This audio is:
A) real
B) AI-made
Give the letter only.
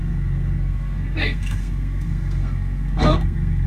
B